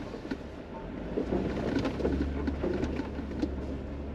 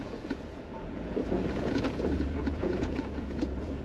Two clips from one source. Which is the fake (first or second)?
second